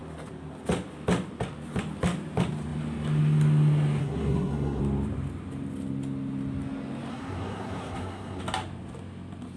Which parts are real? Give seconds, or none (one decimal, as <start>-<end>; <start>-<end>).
0.0-4.0; 4.8-7.1; 8.4-9.6